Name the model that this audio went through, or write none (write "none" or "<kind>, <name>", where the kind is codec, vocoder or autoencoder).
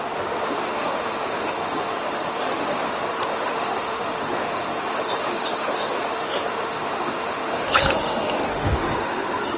autoencoder, DAC-VAE